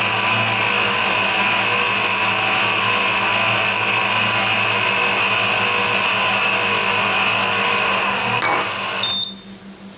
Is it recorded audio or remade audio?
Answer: recorded